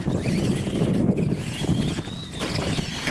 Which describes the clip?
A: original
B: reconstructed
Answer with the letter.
A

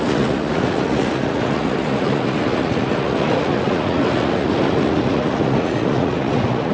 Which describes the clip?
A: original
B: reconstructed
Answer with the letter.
B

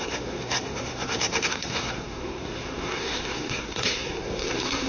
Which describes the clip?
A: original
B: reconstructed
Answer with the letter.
B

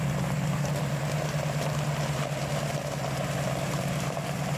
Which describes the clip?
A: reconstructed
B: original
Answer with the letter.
B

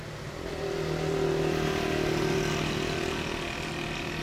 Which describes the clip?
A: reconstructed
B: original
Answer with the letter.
B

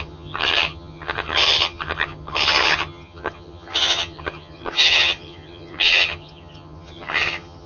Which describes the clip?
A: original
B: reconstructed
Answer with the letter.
B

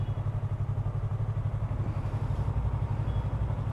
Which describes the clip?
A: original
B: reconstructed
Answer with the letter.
A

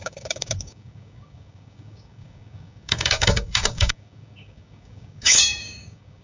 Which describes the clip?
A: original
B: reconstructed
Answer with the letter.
B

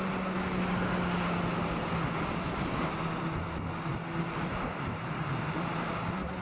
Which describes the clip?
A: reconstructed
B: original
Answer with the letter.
B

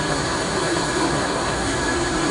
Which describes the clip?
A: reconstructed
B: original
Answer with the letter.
A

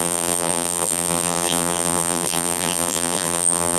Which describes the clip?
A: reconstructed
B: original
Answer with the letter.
A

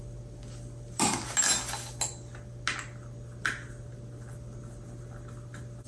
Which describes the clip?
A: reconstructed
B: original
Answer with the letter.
B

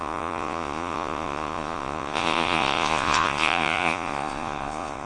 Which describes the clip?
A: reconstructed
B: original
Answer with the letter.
A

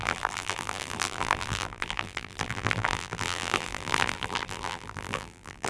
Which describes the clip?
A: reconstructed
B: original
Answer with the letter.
A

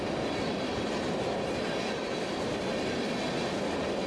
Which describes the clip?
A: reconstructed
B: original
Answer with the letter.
B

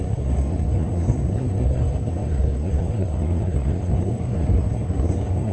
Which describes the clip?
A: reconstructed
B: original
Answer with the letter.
A